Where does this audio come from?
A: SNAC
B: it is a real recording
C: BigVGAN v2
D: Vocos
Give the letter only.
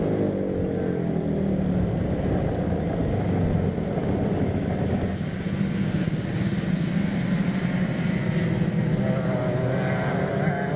B